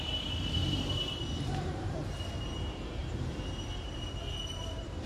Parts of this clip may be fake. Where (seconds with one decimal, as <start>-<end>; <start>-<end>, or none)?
0.6-2.2; 3.0-3.7